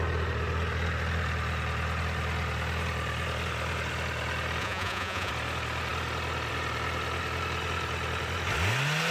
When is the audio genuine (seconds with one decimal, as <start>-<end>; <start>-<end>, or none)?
0.0-4.6; 5.3-9.1